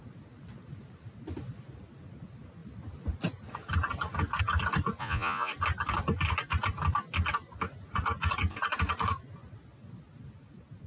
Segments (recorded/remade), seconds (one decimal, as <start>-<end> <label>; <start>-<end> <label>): 0.0-5.0 recorded; 5.0-5.5 remade; 5.5-10.9 recorded